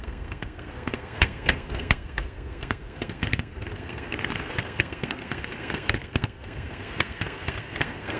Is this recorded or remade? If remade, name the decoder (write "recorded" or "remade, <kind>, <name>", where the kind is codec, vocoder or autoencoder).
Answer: remade, codec, SNAC